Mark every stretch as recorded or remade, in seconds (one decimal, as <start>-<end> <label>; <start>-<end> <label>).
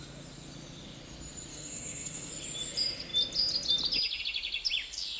0.0-1.5 recorded; 1.5-2.3 remade; 2.3-5.2 recorded